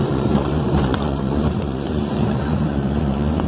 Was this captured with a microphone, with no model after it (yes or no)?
no